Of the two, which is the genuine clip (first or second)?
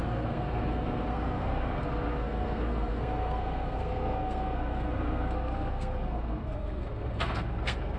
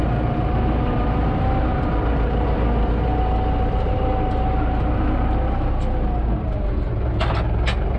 second